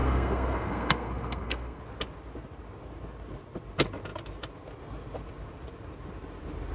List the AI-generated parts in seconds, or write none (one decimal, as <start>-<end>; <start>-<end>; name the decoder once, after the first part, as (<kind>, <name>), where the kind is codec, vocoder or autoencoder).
0.0-1.8 (codec, SNAC)